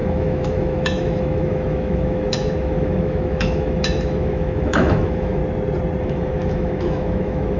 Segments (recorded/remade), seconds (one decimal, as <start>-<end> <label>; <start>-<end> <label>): 0.0-5.4 remade; 5.4-6.0 recorded; 6.0-7.6 remade